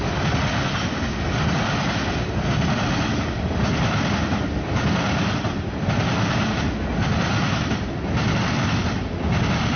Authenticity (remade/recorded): recorded